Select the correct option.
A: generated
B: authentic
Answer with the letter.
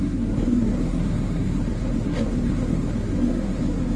A